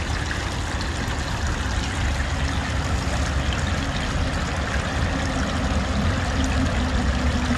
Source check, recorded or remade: recorded